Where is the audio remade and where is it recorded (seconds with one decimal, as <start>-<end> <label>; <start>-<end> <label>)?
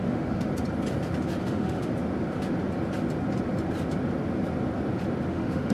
0.0-0.5 remade; 0.5-1.4 recorded; 1.4-1.9 remade; 1.9-5.3 recorded; 5.3-5.7 remade